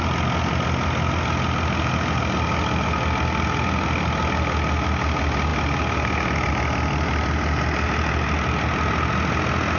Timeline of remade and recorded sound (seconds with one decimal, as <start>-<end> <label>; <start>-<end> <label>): 0.0-9.8 recorded